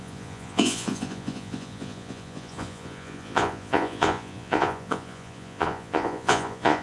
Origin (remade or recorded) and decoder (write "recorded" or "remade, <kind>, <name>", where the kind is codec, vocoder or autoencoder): remade, vocoder, Vocos